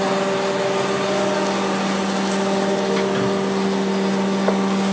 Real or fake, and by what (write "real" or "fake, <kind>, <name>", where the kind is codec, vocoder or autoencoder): real